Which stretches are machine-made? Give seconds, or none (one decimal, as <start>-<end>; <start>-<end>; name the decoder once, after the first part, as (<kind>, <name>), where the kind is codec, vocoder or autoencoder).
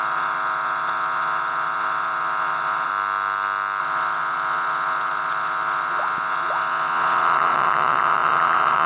0.0-2.9 (vocoder, Vocos); 3.8-8.9